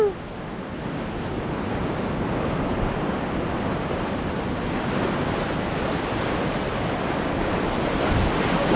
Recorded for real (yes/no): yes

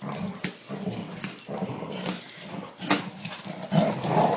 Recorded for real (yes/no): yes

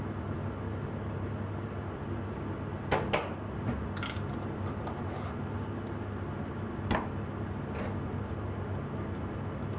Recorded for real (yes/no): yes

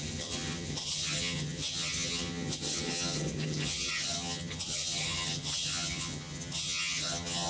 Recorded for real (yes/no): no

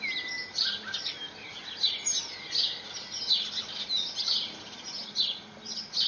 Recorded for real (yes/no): yes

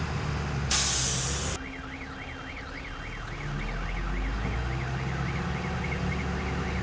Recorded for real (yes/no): yes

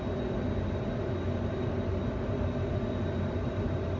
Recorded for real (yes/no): yes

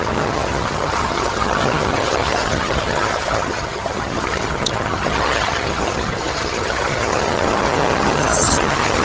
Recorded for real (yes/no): no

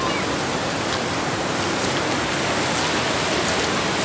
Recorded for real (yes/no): yes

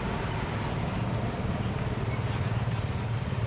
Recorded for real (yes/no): yes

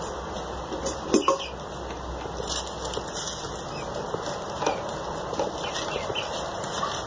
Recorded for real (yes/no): yes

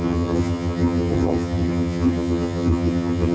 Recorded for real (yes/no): no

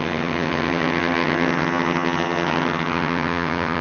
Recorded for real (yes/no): no